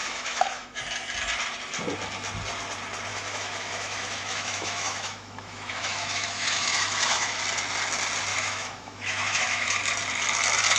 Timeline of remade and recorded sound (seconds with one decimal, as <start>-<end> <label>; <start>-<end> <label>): 0.0-0.8 remade; 0.8-3.1 recorded; 3.1-7.4 remade; 7.4-8.3 recorded; 8.3-9.7 remade; 9.7-10.8 recorded